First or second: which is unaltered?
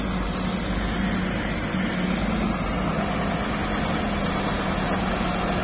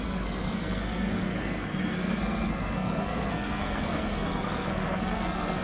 first